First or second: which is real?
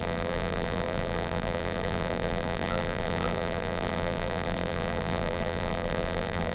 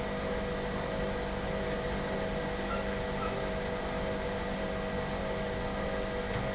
second